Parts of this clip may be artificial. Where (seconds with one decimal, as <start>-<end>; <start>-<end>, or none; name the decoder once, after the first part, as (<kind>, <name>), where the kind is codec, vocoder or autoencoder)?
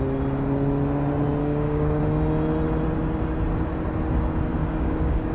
1.4-2.0 (codec, DAC); 4.6-5.3